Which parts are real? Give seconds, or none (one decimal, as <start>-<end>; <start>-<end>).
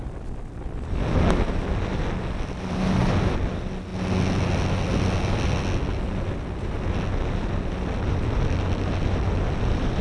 0.0-10.0